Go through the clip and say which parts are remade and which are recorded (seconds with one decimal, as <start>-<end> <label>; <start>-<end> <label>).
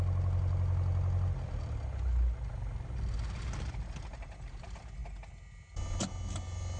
0.0-6.8 recorded